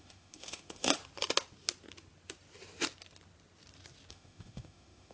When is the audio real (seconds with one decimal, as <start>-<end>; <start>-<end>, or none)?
1.0-4.1